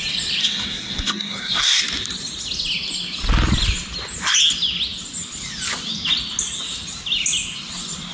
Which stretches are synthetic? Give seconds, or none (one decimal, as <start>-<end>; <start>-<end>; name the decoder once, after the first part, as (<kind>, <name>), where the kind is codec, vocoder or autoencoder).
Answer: 0.4-1.8 (codec, SNAC)